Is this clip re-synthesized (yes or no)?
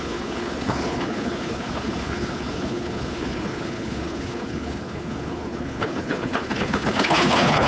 yes